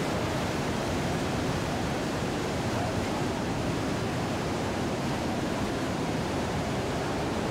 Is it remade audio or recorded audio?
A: remade